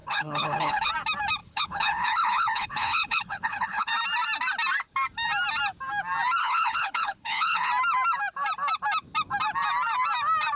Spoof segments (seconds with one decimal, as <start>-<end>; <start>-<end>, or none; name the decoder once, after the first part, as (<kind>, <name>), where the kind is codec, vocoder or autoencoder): 0.0-0.9 (codec, HILCodec); 1.4-3.9; 6.4-7.7